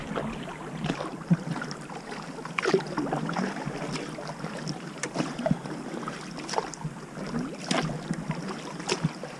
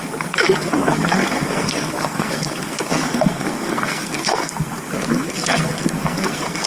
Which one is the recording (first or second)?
first